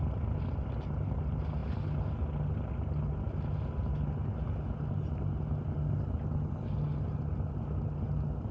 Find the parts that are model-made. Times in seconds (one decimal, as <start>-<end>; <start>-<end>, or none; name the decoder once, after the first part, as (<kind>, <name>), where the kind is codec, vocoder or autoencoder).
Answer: none